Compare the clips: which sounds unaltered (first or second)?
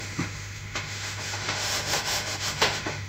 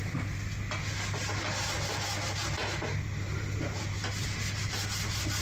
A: second